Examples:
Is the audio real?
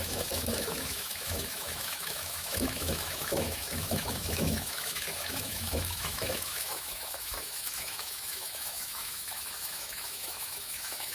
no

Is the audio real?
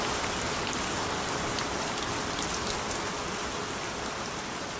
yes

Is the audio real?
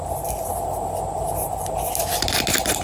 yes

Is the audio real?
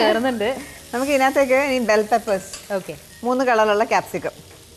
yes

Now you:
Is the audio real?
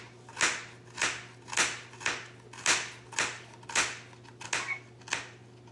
yes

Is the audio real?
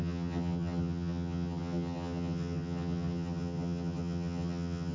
no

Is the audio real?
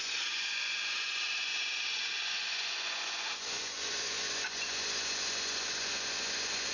no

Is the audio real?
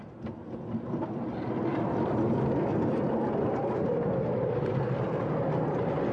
yes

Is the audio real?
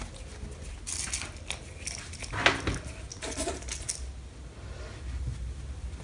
yes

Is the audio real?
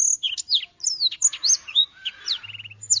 yes